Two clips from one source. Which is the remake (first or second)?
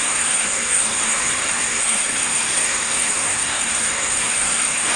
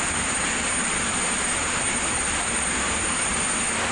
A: first